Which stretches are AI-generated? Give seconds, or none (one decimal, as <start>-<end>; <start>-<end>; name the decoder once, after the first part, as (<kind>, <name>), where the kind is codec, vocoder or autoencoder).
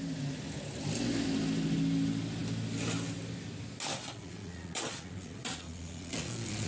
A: 3.9-6.7 (vocoder, Vocos)